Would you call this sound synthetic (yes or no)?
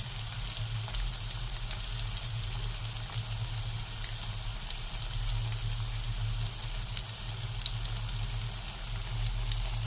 no